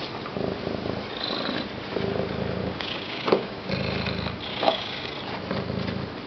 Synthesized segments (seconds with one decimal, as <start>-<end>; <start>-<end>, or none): 2.6-3.7; 4.5-5.1